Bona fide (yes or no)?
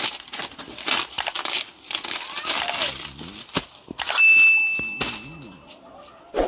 yes